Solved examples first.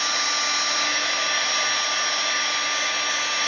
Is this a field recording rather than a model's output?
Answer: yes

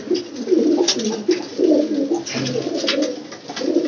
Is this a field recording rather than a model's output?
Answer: yes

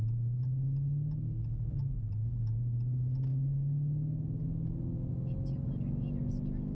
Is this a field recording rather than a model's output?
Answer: yes